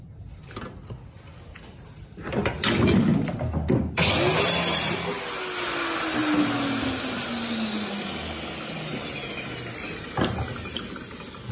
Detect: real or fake real